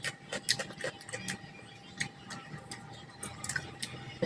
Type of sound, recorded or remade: recorded